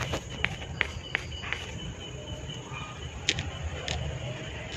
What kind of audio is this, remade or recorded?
recorded